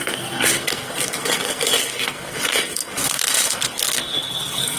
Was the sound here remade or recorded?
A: remade